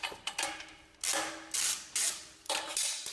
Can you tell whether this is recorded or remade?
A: recorded